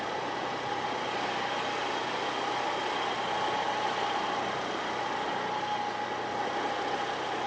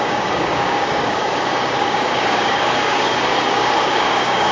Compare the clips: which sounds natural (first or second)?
first